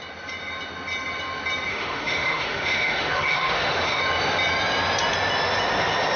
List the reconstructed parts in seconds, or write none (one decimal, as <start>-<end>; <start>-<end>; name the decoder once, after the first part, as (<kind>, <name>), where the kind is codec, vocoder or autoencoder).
1.7-4.0 (autoencoder, DAC-VAE)